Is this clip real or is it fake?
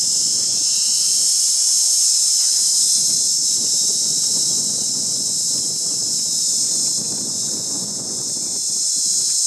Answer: fake